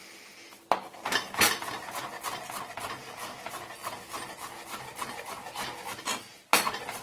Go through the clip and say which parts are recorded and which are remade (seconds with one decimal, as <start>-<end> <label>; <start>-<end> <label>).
0.0-7.0 recorded